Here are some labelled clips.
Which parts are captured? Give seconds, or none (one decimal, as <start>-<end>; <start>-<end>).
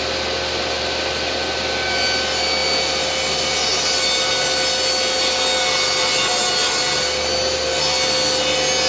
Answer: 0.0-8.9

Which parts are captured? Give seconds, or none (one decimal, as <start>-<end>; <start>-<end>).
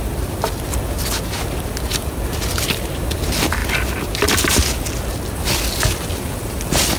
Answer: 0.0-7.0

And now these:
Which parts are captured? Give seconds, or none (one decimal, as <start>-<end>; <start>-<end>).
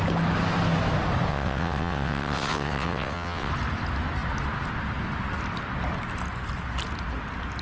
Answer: 0.0-1.3; 3.5-7.6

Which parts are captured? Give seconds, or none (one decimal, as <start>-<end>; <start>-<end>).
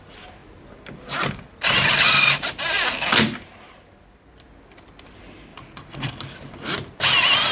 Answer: 0.0-5.5; 6.1-7.5